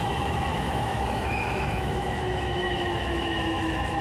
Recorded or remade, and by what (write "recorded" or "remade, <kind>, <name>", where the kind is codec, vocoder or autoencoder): remade, autoencoder, DAC-VAE